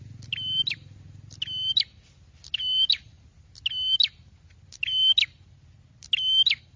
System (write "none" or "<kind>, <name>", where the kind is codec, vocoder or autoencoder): none